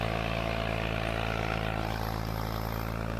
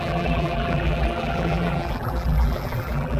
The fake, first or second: second